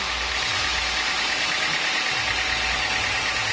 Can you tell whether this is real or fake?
real